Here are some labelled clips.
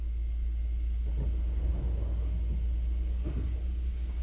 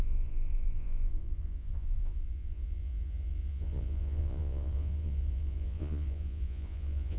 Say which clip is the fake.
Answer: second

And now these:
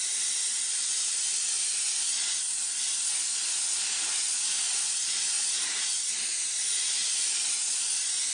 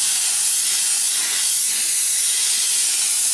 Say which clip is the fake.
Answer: second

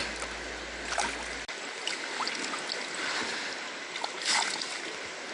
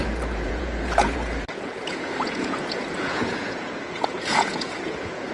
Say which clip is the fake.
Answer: second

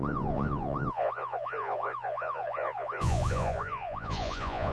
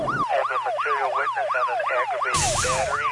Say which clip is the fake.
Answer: first